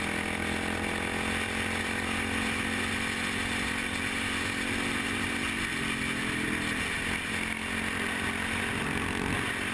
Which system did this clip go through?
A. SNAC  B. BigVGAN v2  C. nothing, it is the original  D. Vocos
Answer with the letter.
C